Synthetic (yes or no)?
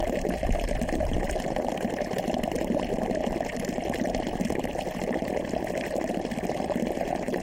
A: no